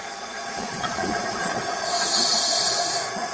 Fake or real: fake